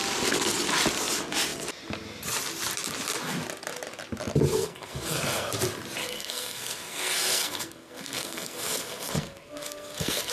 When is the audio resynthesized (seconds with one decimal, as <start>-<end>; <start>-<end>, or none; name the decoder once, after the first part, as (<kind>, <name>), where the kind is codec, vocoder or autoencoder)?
4.5-5.5 (codec, SNAC); 6.0-10.3